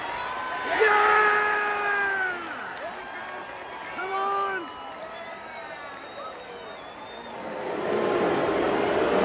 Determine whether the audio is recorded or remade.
recorded